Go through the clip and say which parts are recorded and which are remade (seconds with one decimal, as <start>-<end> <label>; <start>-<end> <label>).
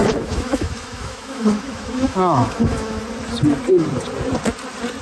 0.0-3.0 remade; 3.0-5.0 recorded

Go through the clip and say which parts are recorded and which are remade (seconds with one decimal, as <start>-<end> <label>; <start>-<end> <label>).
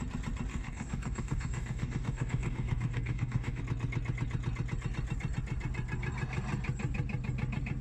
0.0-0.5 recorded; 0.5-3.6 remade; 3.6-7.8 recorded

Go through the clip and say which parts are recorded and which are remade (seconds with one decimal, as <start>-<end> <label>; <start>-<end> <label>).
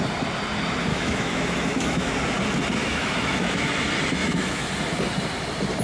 0.0-0.9 recorded; 0.9-2.1 remade; 2.1-2.8 recorded; 2.8-3.7 remade; 3.7-4.2 recorded; 4.2-4.7 remade; 4.7-5.8 recorded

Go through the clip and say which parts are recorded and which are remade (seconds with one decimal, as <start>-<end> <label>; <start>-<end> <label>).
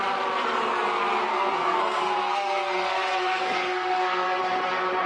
0.0-1.3 recorded; 1.3-4.4 remade; 4.4-5.1 recorded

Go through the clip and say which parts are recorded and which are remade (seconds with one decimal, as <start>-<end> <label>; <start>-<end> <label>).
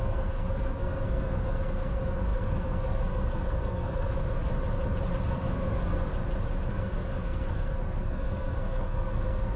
0.0-4.5 remade; 4.5-5.2 recorded; 5.2-6.1 remade; 6.1-6.7 recorded; 6.7-9.6 remade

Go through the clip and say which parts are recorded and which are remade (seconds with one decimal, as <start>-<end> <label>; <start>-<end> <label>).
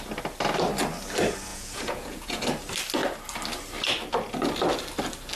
0.0-1.5 recorded; 1.5-2.4 remade; 2.4-5.4 recorded